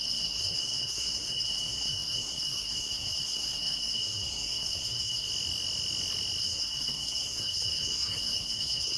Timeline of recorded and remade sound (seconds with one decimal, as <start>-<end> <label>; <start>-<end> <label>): 0.0-5.3 remade; 5.3-6.4 recorded; 6.4-9.0 remade